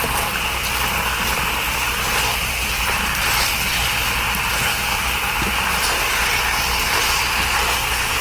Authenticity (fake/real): real